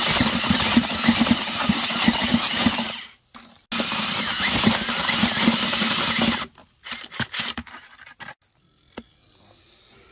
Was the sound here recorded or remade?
recorded